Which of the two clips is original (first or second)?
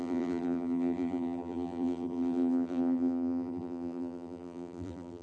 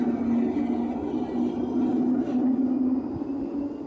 second